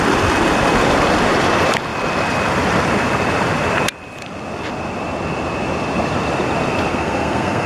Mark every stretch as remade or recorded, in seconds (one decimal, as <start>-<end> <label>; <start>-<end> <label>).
0.0-6.9 recorded; 6.9-7.7 remade